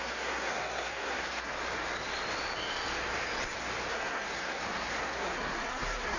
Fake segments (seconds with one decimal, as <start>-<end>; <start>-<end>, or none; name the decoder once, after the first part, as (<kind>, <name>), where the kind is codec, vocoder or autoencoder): 0.0-1.5 (codec, SNAC); 3.9-6.2